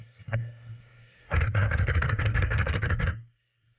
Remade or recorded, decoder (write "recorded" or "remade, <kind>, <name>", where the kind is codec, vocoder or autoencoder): remade, codec, SNAC